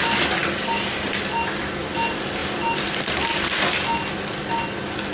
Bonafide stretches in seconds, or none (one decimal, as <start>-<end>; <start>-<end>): 0.0-5.1